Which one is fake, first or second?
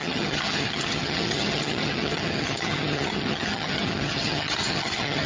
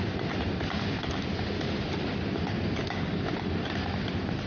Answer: first